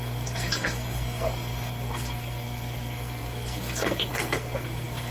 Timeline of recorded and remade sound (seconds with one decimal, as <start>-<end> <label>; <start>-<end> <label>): 0.0-5.1 remade